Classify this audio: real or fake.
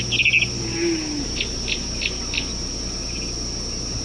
real